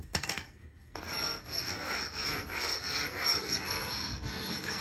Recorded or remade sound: remade